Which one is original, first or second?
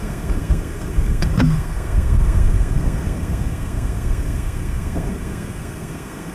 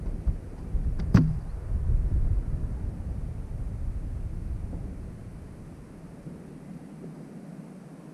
second